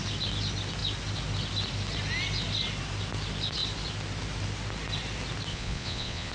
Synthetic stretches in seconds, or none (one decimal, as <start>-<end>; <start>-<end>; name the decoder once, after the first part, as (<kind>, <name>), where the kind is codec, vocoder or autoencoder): 5.5-6.3 (vocoder, Vocos)